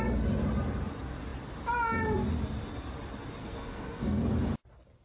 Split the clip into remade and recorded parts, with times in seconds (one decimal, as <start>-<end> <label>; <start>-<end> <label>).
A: 0.0-3.4 recorded; 3.4-4.2 remade; 4.2-5.0 recorded